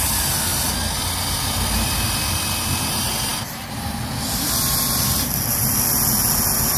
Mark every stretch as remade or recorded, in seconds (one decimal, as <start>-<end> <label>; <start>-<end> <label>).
0.0-0.5 remade; 0.5-1.0 recorded; 1.0-3.3 remade; 3.3-6.8 recorded